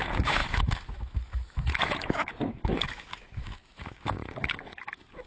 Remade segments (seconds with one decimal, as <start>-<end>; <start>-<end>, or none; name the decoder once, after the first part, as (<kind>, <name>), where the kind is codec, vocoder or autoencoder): 0.0-5.3 (autoencoder, DAC-VAE)